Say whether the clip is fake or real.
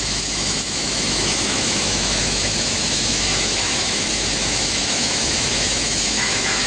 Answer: fake